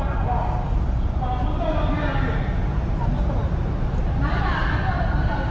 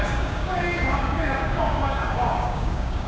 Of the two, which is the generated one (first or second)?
second